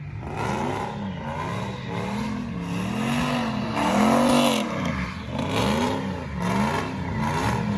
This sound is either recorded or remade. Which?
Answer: recorded